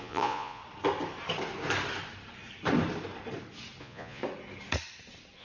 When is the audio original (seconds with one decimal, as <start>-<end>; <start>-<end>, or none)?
0.6-3.8; 4.2-5.4